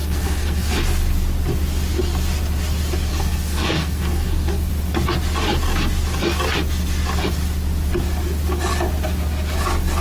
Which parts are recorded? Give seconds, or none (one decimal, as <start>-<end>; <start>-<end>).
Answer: 0.7-3.1; 4.7-10.0